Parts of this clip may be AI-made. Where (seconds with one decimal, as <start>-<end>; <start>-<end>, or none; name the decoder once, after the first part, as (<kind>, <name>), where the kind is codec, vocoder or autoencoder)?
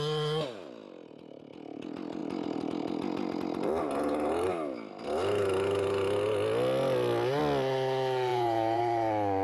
8.3-8.8 (vocoder, Vocos)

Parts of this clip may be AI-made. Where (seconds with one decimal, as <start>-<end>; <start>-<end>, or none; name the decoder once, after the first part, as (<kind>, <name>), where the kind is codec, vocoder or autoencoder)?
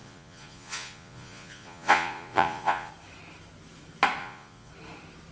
0.0-2.9 (vocoder, Vocos); 4.2-4.7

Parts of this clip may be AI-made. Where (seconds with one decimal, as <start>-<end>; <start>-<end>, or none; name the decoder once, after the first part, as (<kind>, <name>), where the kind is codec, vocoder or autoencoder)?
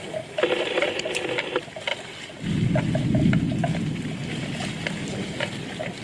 none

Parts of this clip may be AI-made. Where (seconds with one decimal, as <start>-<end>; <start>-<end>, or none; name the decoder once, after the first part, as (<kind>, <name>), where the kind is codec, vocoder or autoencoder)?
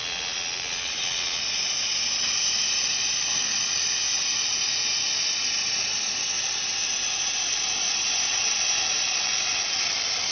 0.0-1.4 (vocoder, Vocos)